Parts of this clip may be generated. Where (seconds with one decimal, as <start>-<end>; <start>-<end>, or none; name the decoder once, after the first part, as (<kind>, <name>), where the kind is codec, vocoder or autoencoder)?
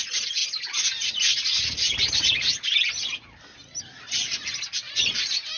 none